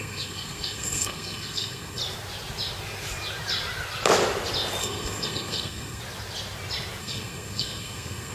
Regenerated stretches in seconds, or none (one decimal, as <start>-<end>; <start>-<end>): 0.0-2.0; 4.8-6.0; 7.0-8.3